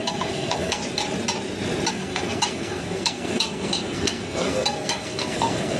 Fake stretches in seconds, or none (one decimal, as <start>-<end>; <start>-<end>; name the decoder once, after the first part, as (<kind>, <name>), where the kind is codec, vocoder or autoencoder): 0.0-0.8 (codec, SNAC); 1.9-5.8